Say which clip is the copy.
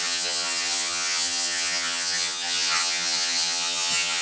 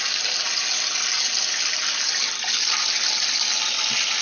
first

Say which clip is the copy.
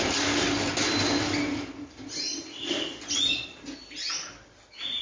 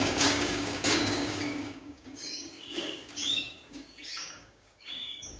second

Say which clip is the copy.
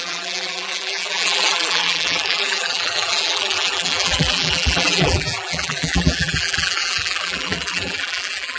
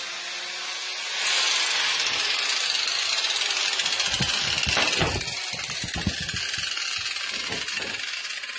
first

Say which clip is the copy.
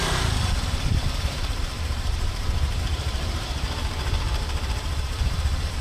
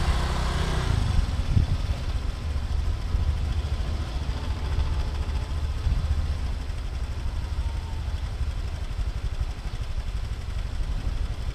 first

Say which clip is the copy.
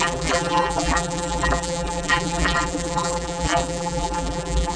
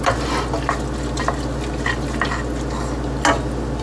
first